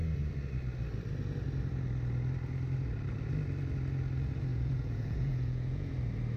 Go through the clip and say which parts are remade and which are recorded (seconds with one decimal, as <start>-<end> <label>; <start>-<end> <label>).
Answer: 0.0-4.5 recorded; 4.5-5.9 remade; 5.9-6.4 recorded